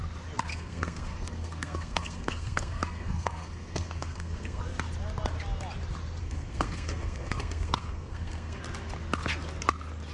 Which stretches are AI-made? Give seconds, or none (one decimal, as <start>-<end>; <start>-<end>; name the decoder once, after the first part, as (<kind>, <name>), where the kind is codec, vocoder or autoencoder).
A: 0.5-4.6 (codec, SNAC); 6.2-8.6